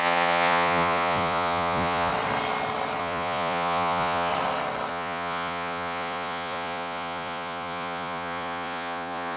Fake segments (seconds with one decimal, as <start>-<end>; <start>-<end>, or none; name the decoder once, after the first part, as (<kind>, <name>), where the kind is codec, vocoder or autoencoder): 0.0-2.1 (vocoder, Vocos); 3.0-4.3; 4.9-9.4